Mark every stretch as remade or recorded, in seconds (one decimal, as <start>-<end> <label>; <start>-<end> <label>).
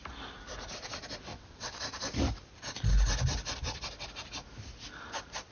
0.0-1.3 recorded; 1.3-1.8 remade; 1.8-5.5 recorded